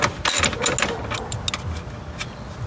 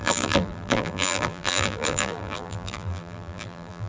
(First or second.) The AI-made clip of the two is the second